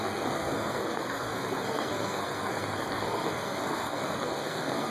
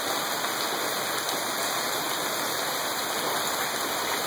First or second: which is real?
second